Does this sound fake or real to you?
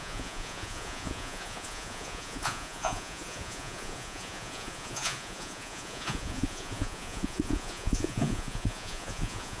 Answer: fake